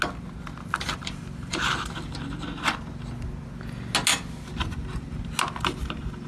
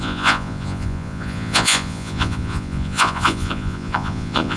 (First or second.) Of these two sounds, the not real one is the second